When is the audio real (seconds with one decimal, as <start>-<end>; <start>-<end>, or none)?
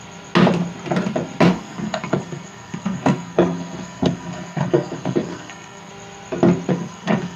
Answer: 0.0-1.5; 5.9-6.7